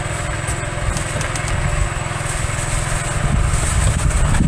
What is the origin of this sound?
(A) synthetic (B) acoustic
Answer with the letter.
B